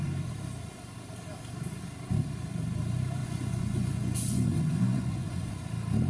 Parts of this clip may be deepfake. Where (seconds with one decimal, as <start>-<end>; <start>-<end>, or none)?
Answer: 3.2-5.5

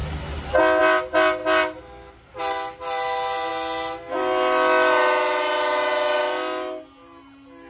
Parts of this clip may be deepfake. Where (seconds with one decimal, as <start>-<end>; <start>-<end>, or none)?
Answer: none

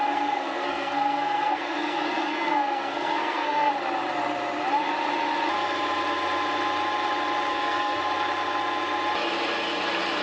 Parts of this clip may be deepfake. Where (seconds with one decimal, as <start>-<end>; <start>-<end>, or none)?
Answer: 0.0-3.7; 7.5-8.0

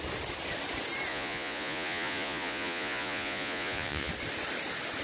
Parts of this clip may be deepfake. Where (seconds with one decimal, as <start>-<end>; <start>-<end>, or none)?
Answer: 1.1-4.1